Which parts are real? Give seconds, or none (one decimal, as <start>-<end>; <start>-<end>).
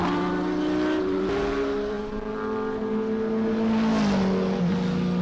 0.0-5.2